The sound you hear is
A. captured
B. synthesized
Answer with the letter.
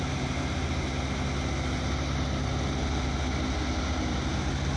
A